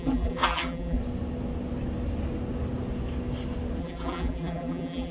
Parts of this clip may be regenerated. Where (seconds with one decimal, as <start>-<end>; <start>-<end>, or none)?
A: 0.0-1.0; 3.8-5.1